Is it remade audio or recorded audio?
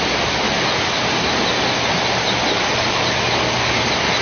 recorded